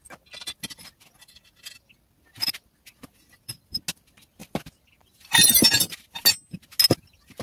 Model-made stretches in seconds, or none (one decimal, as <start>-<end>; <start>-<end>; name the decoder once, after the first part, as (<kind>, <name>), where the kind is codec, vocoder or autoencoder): none